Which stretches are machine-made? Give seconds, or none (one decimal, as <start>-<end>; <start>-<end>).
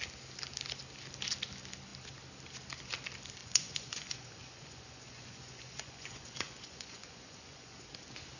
3.4-7.9